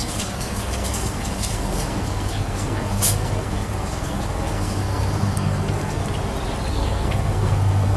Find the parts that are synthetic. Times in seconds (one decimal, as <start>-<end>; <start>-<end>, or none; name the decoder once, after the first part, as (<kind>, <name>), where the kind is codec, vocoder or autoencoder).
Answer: 0.0-6.0 (codec, SNAC); 6.7-8.0